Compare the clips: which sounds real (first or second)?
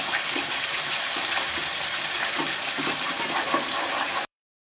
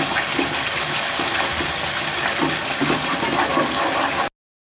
second